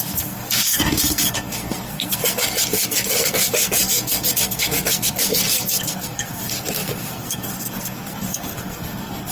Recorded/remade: remade